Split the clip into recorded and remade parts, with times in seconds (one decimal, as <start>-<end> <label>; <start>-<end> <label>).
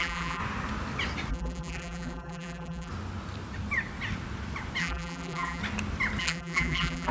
0.0-0.4 remade; 0.4-1.3 recorded; 1.3-2.9 remade; 2.9-4.8 recorded; 4.8-5.6 remade; 5.6-6.2 recorded; 6.2-7.1 remade